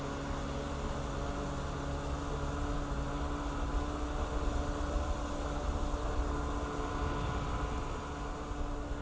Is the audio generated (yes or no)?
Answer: no